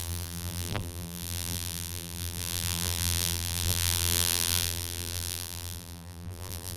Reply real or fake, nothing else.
fake